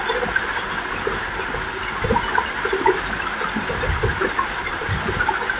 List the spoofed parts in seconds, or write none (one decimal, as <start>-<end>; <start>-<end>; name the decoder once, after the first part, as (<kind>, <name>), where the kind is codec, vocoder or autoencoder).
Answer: 4.6-5.6 (vocoder, BigVGAN v2)